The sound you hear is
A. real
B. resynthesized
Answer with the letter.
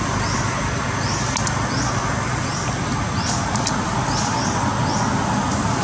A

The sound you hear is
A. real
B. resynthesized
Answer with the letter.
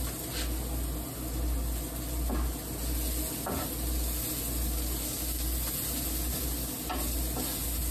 A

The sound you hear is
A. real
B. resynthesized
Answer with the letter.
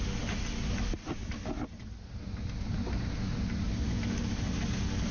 A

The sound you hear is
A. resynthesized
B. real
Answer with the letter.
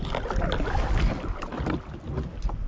B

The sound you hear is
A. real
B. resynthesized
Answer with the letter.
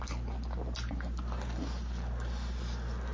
A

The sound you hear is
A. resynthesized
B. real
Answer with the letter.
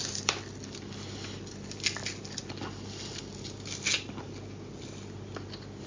B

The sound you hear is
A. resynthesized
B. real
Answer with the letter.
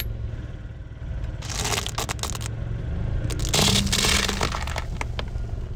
B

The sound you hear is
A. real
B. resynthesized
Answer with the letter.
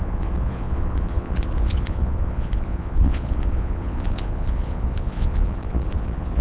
B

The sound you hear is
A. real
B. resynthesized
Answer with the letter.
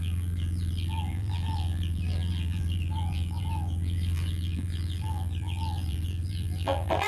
B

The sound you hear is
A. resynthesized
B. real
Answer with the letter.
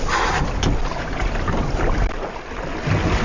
B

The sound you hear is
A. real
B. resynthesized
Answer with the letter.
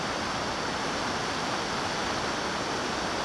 A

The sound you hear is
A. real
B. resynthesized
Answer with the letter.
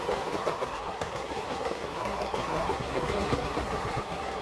B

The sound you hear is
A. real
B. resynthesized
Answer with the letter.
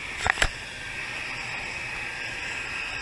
A